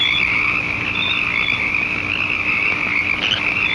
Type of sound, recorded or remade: recorded